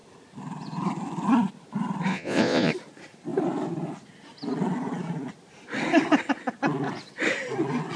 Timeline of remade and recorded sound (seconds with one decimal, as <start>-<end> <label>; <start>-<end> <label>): 0.0-2.1 recorded; 2.1-2.7 remade; 2.7-8.0 recorded